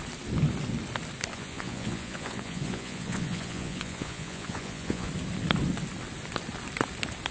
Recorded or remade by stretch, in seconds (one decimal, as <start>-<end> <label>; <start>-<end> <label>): 0.0-1.3 recorded; 1.3-5.1 remade; 5.1-7.3 recorded